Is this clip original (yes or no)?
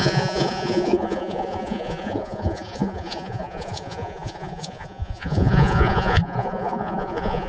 no